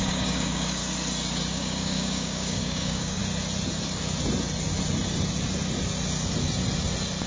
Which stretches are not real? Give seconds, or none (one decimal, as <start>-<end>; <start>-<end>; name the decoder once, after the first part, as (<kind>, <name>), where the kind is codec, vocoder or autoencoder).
0.0-0.8 (codec, DAC); 1.5-3.2